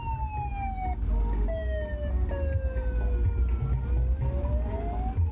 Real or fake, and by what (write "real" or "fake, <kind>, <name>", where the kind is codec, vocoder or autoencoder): real